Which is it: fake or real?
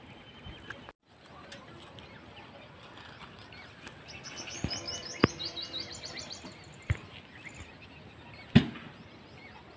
real